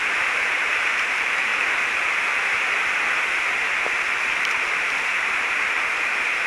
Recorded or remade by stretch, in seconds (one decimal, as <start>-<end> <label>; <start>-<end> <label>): 0.0-1.5 remade; 1.5-3.8 recorded; 3.8-6.5 remade